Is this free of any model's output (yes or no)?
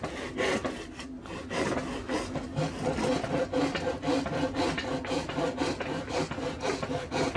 yes